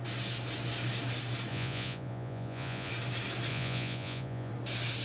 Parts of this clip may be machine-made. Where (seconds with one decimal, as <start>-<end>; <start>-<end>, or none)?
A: 1.5-2.9; 3.5-4.5